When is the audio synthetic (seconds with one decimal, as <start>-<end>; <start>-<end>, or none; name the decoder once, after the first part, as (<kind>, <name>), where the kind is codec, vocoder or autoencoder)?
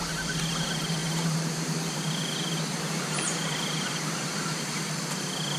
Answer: 1.0-4.3 (vocoder, BigVGAN v2)